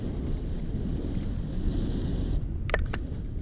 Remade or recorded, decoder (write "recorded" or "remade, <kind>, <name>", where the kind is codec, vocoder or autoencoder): recorded